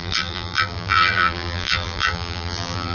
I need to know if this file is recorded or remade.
remade